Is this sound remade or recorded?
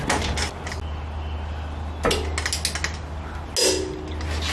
recorded